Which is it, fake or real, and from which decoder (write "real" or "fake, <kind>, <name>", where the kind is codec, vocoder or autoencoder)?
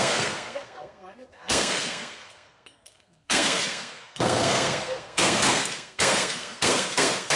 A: fake, codec, SNAC